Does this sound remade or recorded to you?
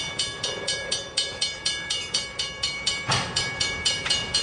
remade